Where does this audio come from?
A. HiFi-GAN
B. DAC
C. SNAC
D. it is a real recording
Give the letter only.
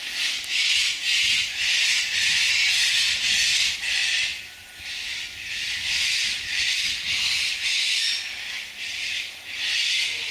D